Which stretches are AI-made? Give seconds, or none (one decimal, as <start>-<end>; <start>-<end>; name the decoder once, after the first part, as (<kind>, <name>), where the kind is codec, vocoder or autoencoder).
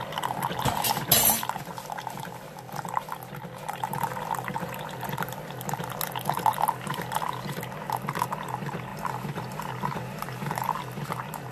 none